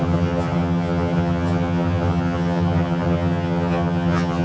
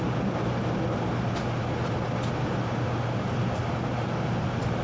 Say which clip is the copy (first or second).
first